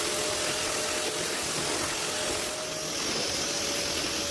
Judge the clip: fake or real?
real